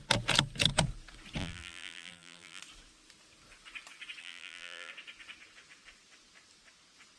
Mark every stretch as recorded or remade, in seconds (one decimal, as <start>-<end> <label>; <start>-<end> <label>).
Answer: 0.0-1.4 recorded; 1.4-2.6 remade; 2.6-4.2 recorded; 4.2-4.9 remade; 4.9-7.2 recorded